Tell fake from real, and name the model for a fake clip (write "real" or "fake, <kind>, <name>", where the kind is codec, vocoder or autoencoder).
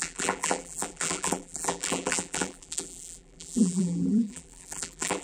fake, vocoder, BigVGAN v2